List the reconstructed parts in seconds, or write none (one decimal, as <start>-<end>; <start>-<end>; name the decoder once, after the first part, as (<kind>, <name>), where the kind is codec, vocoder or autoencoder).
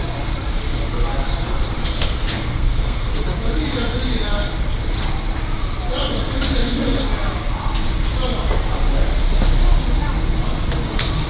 1.8-3.2 (codec, SNAC)